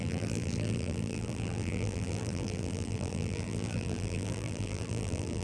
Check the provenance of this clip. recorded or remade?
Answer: remade